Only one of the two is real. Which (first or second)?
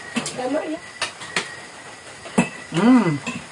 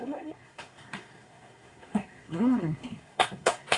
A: first